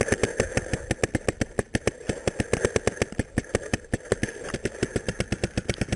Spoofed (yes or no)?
no